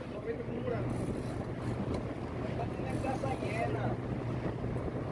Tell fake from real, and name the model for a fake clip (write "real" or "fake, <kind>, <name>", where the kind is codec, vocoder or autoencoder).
real